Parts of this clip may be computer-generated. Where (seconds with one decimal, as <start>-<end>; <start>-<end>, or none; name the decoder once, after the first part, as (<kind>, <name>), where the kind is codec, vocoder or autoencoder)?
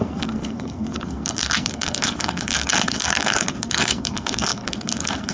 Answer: 0.0-5.3 (codec, SNAC)